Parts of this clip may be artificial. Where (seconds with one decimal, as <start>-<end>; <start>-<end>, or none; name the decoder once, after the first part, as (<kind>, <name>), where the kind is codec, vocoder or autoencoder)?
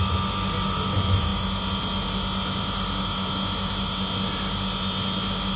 none